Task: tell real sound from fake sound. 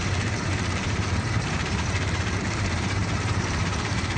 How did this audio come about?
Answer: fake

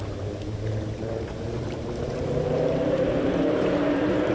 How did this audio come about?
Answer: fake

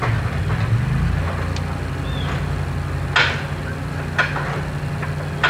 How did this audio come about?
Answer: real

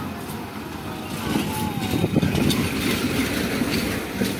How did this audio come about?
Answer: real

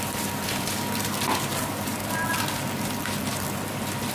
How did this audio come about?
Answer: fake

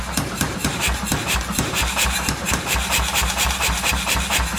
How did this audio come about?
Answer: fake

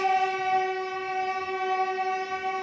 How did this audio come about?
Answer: real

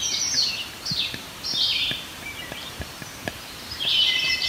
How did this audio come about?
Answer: fake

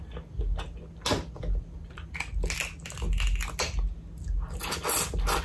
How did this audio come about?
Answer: real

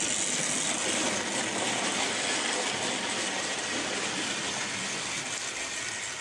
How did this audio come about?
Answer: real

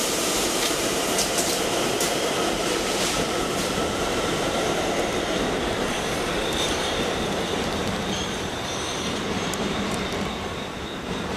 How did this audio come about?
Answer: fake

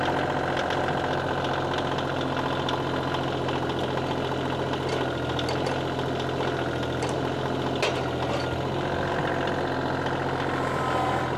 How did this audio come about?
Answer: real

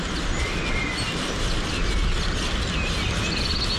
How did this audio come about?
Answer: real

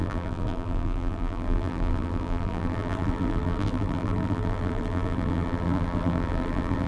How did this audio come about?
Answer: fake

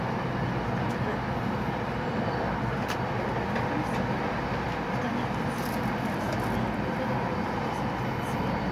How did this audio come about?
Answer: real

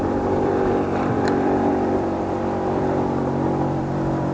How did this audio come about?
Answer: fake